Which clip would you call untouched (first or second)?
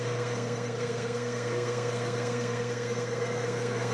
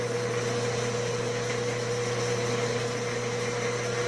second